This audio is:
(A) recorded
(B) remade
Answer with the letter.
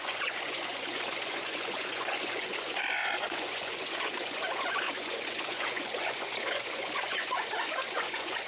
B